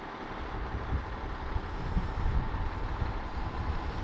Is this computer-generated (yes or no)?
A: no